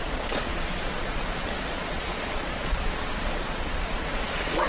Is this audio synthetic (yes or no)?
yes